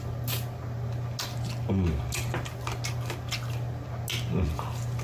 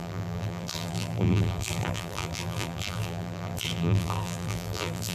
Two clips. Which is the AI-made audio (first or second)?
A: second